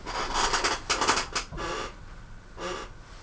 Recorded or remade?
recorded